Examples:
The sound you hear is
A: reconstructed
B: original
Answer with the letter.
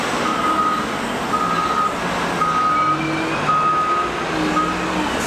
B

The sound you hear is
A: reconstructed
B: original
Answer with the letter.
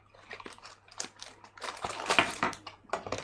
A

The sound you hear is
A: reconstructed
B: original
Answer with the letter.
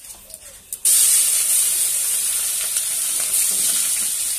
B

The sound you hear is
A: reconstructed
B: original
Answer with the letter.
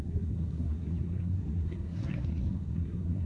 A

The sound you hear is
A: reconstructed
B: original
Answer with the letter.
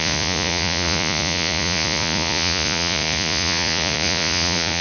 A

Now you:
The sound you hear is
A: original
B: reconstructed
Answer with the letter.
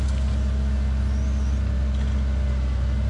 A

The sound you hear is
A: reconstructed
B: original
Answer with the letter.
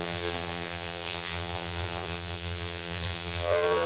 A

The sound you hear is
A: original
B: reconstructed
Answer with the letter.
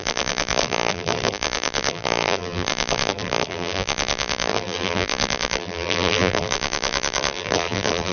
B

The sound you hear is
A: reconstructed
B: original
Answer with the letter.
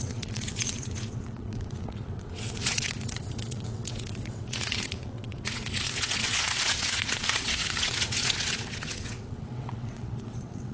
A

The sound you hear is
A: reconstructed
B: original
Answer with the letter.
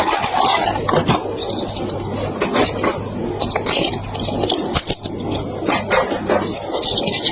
B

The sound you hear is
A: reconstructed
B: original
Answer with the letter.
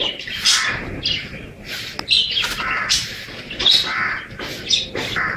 B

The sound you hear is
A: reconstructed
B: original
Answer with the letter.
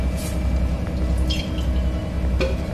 B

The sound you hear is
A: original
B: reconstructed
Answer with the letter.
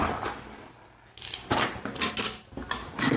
A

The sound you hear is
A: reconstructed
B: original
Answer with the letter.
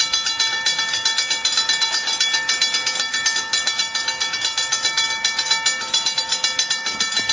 B